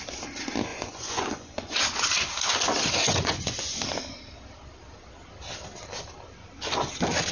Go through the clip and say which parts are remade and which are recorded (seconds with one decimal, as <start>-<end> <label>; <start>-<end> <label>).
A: 0.0-0.7 recorded; 0.7-1.8 remade; 1.8-3.0 recorded; 3.0-3.8 remade; 3.8-7.3 recorded